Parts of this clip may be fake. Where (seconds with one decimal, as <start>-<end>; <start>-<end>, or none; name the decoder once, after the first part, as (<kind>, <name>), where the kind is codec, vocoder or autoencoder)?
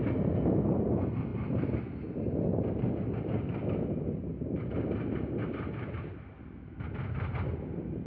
none